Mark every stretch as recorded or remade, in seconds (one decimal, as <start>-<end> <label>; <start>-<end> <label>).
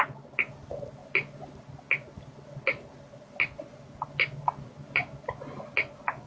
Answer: 0.0-6.3 recorded